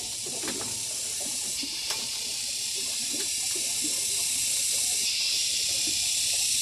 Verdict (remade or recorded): remade